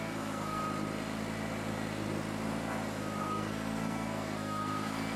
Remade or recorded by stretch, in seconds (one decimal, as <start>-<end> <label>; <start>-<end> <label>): 0.0-0.6 remade; 0.6-3.2 recorded; 3.2-5.2 remade